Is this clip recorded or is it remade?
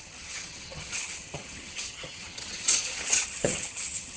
remade